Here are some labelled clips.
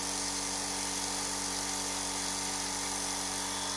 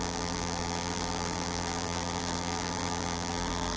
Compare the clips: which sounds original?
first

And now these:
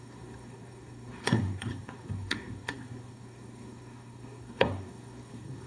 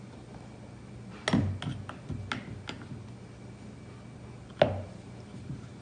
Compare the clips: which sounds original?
second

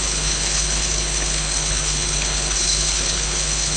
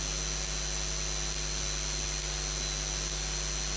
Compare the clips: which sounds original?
second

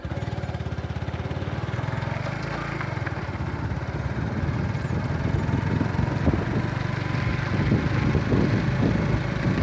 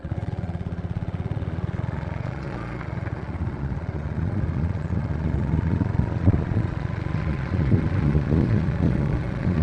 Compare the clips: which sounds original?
first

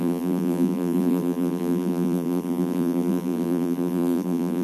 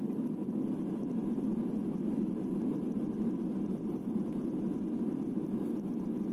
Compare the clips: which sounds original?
second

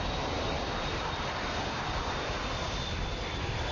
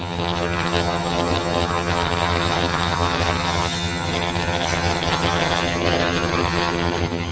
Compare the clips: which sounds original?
first